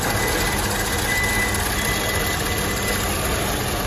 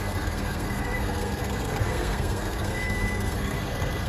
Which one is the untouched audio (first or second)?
first